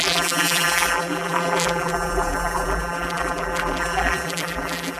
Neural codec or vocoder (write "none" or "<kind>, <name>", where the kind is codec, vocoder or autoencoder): vocoder, BigVGAN v2